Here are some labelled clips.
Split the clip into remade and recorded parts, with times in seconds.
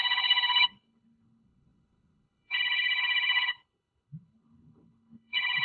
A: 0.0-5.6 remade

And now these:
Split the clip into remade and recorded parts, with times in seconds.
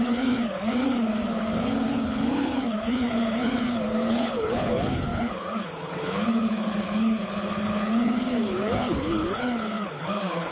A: 0.0-10.5 remade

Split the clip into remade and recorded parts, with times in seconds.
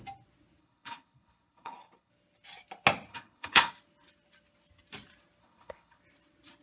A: 0.0-0.6 recorded; 0.6-2.1 remade; 2.1-3.1 recorded; 3.1-3.7 remade; 3.7-5.4 recorded; 5.4-6.0 remade; 6.0-6.6 recorded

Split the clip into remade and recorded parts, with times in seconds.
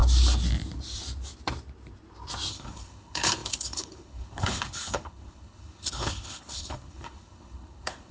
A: 0.0-2.5 recorded; 2.5-8.1 remade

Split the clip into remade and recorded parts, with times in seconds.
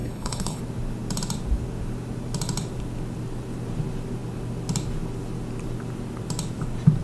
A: 0.0-0.6 remade; 0.6-7.0 recorded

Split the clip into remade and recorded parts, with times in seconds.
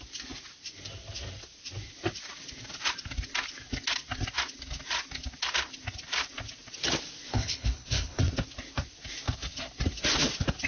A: 0.0-7.3 recorded; 7.3-8.2 remade; 8.2-10.7 recorded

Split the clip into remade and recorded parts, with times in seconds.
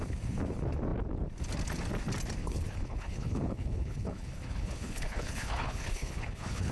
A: 0.0-2.4 recorded; 2.4-6.7 remade